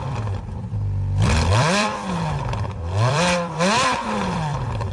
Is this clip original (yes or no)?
no